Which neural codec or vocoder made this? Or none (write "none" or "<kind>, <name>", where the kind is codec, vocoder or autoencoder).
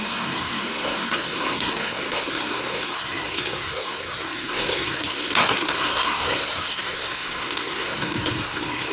codec, SNAC